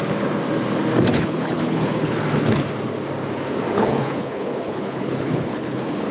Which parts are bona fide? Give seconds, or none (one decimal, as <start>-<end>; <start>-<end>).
0.0-1.1; 2.2-3.7

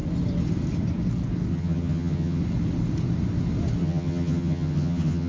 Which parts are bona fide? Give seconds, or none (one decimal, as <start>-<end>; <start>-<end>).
0.0-1.5; 2.4-3.8

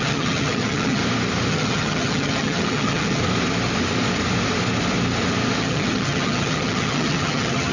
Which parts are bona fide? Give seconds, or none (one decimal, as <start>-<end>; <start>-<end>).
1.0-1.5; 3.2-5.6

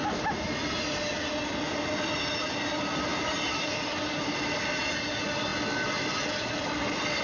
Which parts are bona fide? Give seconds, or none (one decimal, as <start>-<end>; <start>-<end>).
0.0-7.2

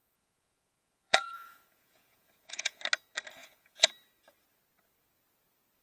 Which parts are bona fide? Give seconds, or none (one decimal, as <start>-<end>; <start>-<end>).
2.8-3.4; 3.9-5.8

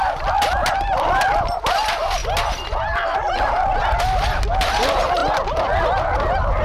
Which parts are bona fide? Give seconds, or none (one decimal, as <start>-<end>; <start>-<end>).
0.0-6.6

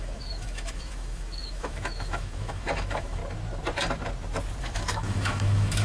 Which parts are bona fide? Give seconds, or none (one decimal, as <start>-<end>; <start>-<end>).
3.2-4.6